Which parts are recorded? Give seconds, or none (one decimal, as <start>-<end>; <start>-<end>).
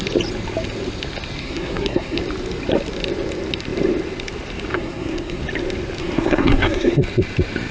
0.0-1.4; 2.2-4.7; 5.4-6.0; 7.0-7.7